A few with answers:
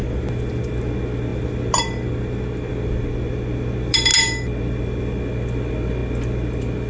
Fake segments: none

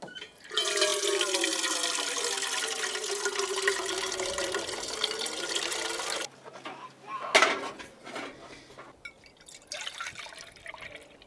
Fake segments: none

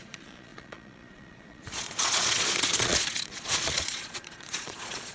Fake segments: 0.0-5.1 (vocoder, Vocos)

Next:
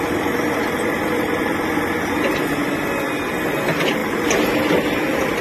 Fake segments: none

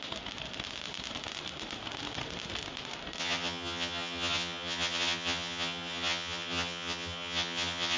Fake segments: 3.2-8.0 (vocoder, HiFi-GAN)

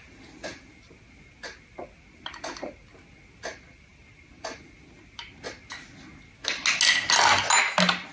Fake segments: none

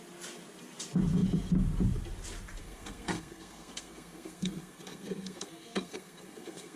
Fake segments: 2.6-6.8 (codec, SNAC)